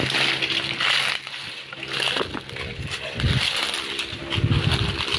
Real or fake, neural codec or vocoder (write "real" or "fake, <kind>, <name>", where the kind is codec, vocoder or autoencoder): real